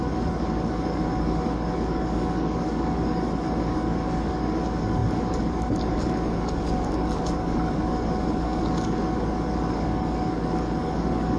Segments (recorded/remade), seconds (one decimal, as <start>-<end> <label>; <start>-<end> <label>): 0.0-11.4 remade